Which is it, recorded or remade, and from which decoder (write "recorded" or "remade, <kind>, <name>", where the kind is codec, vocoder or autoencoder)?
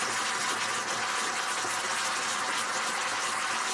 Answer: recorded